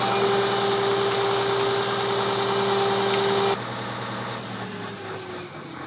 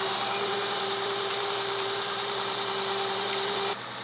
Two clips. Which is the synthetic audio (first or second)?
second